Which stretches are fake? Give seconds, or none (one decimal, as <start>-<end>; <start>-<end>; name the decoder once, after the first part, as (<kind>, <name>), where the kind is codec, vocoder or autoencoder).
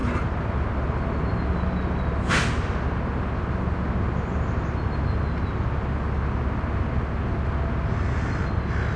none